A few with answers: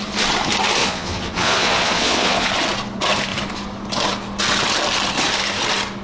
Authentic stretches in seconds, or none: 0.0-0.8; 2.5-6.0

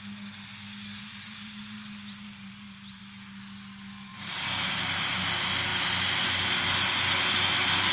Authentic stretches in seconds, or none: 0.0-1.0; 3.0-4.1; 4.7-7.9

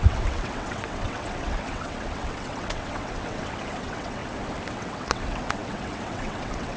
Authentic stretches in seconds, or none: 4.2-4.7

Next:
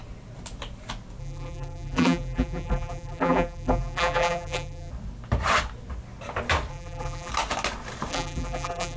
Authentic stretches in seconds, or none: 0.0-1.2; 4.9-6.7; 7.3-8.1